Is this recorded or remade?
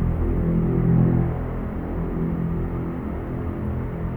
recorded